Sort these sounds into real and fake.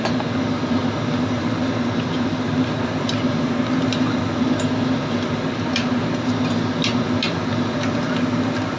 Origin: real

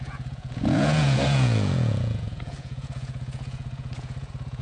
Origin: fake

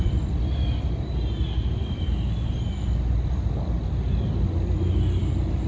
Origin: real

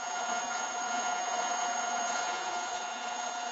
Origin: fake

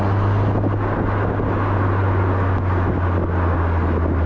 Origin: real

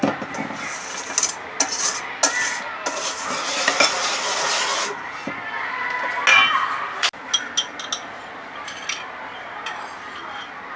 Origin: real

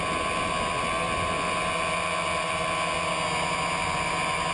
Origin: real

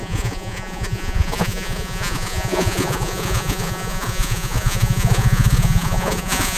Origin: fake